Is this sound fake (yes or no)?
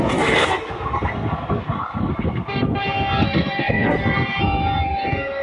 yes